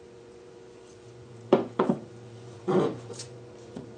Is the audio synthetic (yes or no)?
yes